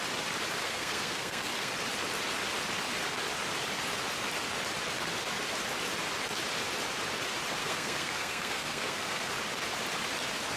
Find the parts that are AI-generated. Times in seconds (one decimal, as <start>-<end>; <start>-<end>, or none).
0.6-1.7; 7.6-9.3